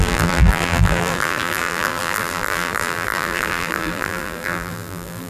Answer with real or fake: fake